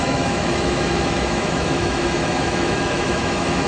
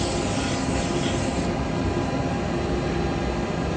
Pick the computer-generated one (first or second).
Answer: first